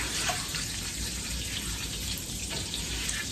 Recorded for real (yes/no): no